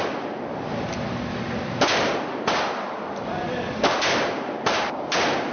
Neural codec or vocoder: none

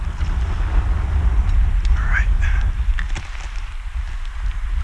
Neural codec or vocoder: none